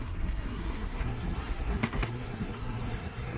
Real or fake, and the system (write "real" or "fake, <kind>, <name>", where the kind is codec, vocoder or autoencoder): fake, codec, SNAC